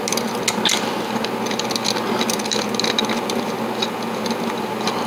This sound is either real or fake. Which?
real